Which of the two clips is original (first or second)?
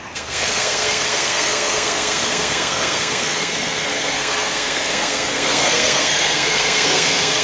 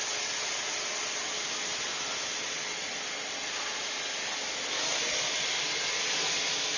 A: second